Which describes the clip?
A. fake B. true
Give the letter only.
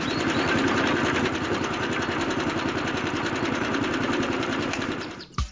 A